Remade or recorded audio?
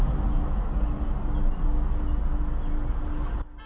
recorded